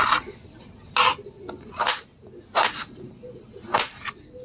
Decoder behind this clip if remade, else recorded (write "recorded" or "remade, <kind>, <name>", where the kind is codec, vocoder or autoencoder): recorded